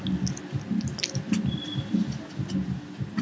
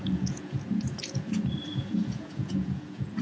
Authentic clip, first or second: first